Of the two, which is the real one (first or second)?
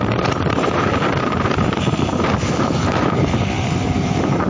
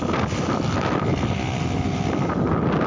second